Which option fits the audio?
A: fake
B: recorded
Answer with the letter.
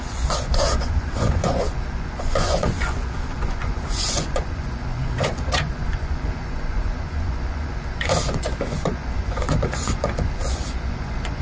A